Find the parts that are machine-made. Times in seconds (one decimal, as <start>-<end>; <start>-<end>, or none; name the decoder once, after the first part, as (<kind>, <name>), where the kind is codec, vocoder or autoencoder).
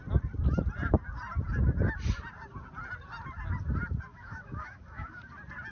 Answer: 4.1-5.3 (autoencoder, DAC-VAE)